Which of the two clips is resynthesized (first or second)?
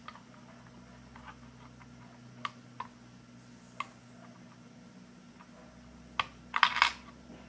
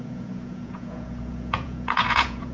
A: second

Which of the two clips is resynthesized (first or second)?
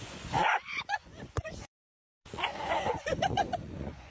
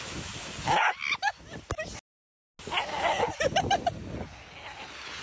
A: first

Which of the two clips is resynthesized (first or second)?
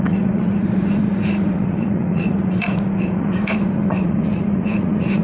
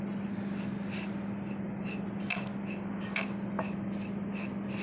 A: first